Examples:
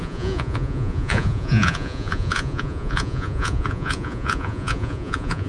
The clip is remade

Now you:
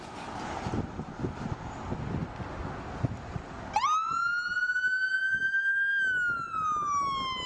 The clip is recorded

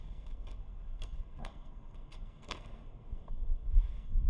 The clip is remade